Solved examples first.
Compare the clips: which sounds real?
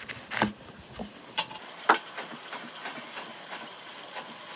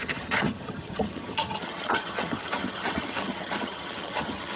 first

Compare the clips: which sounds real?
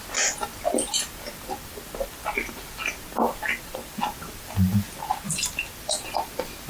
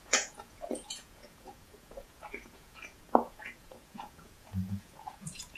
first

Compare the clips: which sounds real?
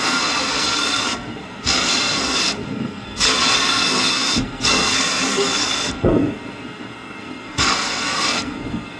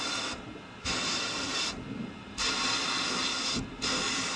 second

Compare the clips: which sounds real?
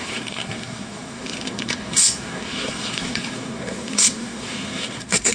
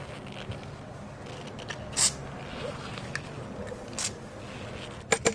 second